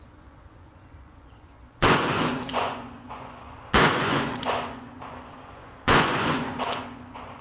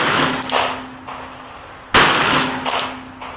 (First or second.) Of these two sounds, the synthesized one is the first